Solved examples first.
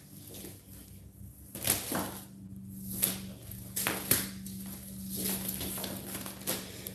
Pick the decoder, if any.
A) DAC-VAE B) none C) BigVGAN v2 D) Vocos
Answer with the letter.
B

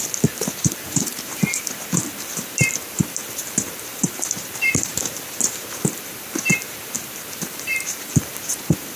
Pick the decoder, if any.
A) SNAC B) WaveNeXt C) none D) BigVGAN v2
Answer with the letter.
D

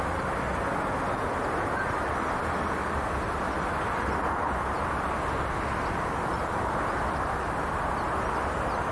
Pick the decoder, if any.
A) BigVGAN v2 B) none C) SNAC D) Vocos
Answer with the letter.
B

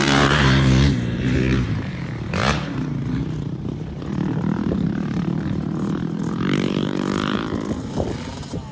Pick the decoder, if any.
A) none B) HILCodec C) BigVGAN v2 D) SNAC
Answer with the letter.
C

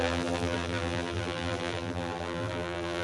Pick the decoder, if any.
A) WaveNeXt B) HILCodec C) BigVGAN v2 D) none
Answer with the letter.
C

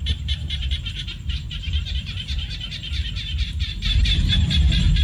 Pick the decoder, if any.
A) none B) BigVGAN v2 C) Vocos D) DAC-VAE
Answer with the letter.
B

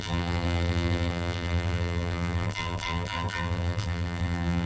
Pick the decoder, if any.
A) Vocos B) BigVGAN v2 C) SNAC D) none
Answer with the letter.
B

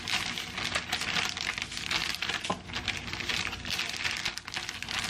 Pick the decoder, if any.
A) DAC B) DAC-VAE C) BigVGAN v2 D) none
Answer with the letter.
D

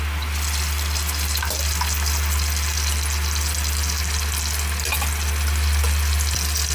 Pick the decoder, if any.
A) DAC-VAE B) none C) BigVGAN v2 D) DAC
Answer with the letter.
B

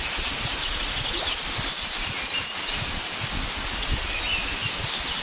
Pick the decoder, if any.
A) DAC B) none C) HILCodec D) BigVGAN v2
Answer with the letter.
B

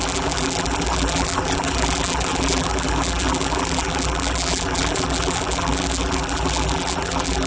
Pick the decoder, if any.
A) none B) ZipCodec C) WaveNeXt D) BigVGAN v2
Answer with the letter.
D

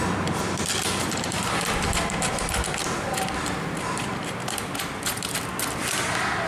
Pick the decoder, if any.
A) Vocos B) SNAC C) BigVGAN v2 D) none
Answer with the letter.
C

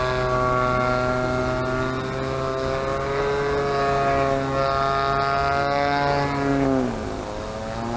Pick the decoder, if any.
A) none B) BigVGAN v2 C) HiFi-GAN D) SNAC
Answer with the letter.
A